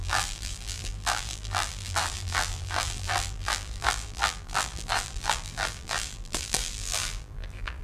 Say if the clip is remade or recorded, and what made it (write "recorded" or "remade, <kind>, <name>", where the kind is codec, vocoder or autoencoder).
remade, vocoder, BigVGAN v2